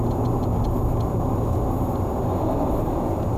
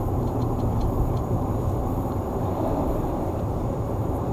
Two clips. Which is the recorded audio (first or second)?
first